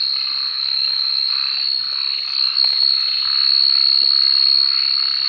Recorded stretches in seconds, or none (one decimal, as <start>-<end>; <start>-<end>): 0.0-0.5; 1.3-5.3